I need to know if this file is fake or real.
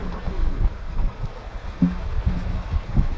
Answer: fake